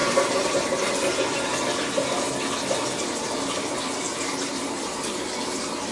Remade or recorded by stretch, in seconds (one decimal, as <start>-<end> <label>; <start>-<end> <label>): 0.0-0.9 remade; 0.9-4.1 recorded; 4.1-5.3 remade; 5.3-5.9 recorded